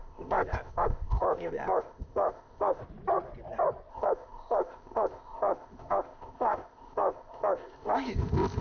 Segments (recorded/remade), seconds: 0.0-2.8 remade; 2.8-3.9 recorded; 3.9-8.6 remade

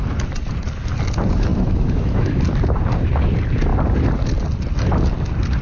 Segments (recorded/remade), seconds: 0.0-1.5 recorded; 1.5-2.4 remade; 2.4-5.6 recorded

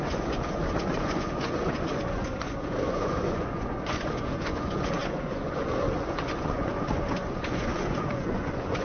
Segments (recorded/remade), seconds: 0.0-8.8 remade